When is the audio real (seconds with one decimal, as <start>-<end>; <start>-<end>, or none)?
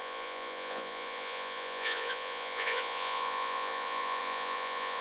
none